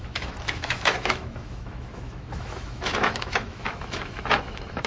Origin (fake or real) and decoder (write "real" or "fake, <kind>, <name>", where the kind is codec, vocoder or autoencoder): fake, autoencoder, DAC-VAE